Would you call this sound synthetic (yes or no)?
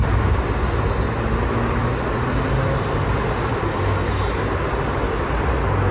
no